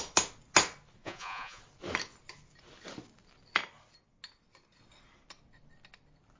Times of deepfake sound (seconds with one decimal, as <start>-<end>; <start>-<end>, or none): 1.0-1.6

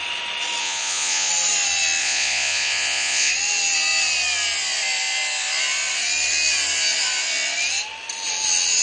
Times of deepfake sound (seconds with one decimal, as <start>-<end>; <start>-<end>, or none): 0.6-1.3; 2.0-3.3